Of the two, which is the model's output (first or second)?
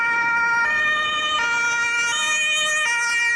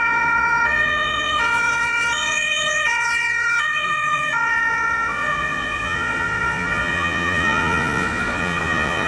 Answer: second